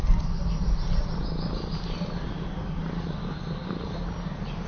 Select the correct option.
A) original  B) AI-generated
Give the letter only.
A